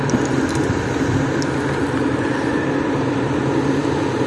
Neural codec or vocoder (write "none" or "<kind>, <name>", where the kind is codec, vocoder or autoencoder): none